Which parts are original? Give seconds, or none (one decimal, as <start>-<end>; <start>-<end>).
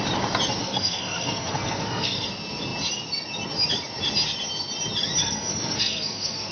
0.0-0.6; 2.3-5.2